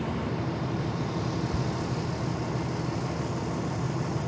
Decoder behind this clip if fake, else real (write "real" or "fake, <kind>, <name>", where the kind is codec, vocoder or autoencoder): real